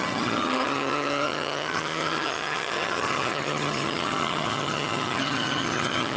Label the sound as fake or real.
fake